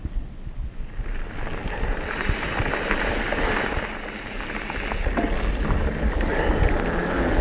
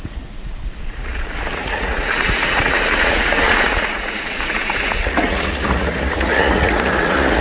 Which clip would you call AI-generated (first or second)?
second